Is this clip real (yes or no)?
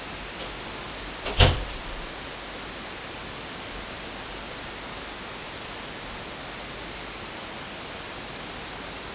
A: yes